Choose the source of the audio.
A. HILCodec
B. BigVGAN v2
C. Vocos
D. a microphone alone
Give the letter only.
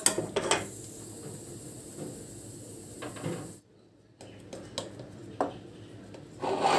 D